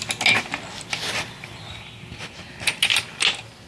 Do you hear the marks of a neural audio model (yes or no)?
no